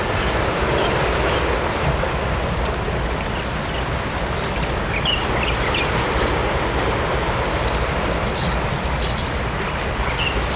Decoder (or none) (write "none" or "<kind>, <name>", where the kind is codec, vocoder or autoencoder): none